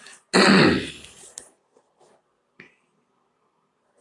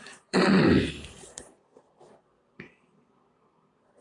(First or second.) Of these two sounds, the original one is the first